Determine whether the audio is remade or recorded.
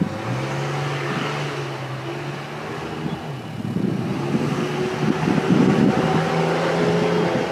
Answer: recorded